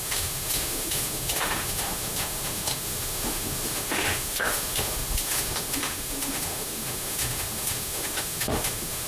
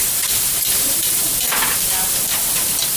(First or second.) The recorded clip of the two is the second